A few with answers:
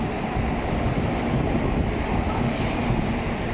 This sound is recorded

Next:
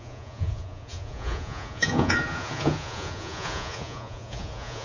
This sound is remade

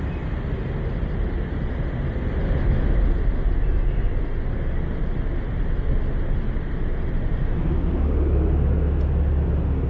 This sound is recorded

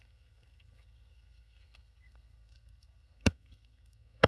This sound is remade